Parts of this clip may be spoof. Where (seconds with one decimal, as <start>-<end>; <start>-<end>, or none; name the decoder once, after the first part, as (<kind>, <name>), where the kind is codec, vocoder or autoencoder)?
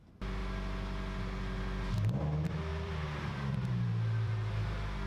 2.7-5.1 (vocoder, BigVGAN v2)